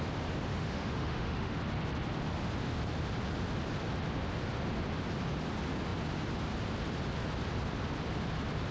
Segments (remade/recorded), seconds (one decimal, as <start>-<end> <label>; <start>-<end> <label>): 0.0-0.5 recorded; 0.5-1.6 remade; 1.6-8.7 recorded